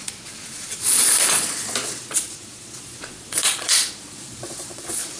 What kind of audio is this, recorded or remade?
remade